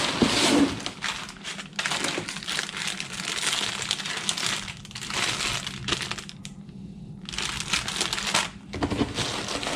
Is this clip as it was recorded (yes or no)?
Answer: yes